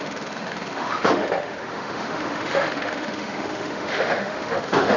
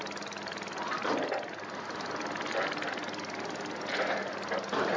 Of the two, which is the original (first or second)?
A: second